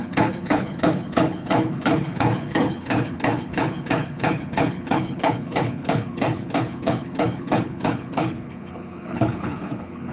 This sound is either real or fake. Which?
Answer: fake